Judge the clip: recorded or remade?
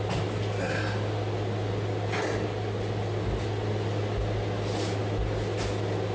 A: recorded